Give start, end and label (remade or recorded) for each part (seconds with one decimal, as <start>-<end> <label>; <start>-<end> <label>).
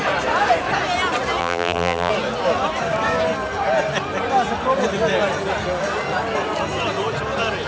0.0-1.4 recorded; 1.4-2.1 remade; 2.1-7.7 recorded